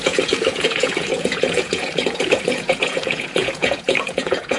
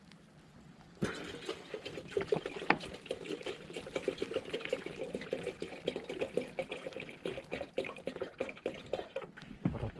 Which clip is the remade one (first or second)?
first